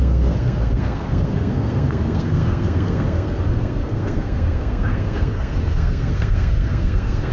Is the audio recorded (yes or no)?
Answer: no